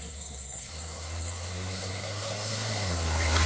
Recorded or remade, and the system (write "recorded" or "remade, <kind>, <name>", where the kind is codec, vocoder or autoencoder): remade, codec, SNAC